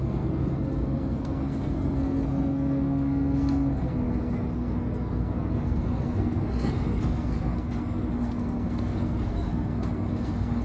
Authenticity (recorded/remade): remade